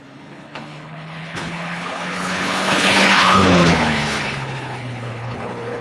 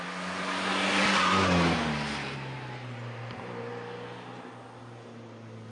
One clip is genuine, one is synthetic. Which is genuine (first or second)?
second